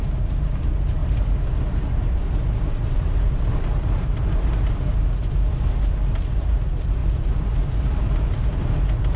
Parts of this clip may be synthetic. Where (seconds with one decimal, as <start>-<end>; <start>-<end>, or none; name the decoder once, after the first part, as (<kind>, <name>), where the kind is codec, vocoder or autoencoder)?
0.0-9.2 (vocoder, BigVGAN v2)